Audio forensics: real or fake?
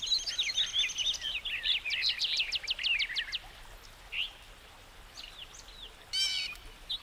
real